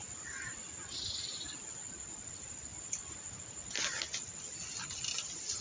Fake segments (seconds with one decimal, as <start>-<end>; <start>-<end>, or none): none